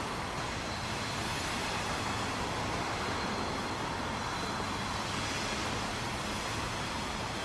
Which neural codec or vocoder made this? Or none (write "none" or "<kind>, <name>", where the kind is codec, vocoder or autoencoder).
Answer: none